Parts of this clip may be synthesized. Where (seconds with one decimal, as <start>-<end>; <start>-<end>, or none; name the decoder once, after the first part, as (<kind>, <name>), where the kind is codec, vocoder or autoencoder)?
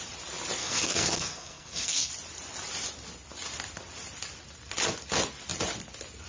0.6-2.1 (codec, SNAC)